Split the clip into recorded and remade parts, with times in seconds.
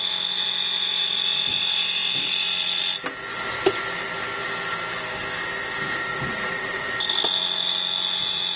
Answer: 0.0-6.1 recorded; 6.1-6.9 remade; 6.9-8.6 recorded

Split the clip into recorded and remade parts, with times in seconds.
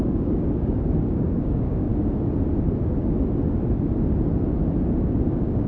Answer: 0.0-1.9 remade; 1.9-5.3 recorded; 5.3-5.7 remade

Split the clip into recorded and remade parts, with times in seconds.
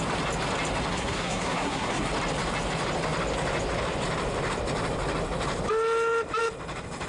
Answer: 0.0-0.9 recorded; 0.9-2.1 remade; 2.1-7.1 recorded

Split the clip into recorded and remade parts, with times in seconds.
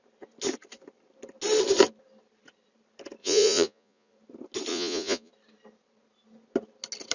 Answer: 0.0-3.2 recorded; 3.2-4.1 remade; 4.1-4.7 recorded; 4.7-5.3 remade; 5.3-7.1 recorded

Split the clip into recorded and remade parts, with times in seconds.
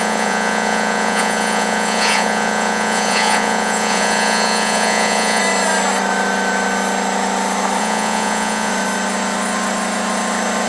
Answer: 0.0-5.4 remade; 5.4-7.8 recorded; 7.8-8.7 remade; 8.7-10.7 recorded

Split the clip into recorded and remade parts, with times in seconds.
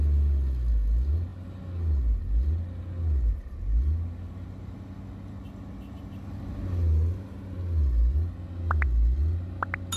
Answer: 0.0-10.0 recorded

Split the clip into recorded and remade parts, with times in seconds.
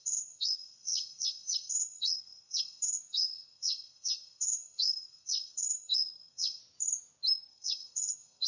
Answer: 0.0-6.6 remade; 6.6-7.5 recorded; 7.5-8.5 remade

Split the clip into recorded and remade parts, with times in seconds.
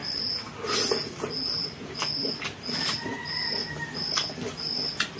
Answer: 0.0-5.2 recorded